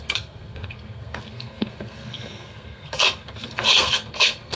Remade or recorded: remade